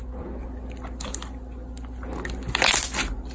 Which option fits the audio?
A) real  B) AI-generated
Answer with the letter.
A